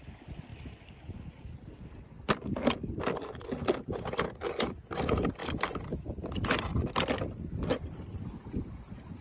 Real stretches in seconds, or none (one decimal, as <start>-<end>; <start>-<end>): 0.0-9.2